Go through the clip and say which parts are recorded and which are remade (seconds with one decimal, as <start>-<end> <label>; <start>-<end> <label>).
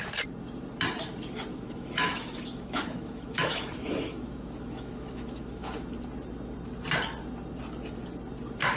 0.0-1.5 recorded; 1.5-5.7 remade; 5.7-8.8 recorded